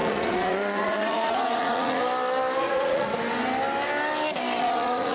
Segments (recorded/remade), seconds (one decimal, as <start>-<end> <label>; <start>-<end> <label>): 0.0-2.0 remade; 2.0-2.6 recorded; 2.6-3.1 remade; 3.1-4.6 recorded; 4.6-5.1 remade